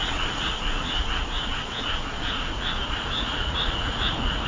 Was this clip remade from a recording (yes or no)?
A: yes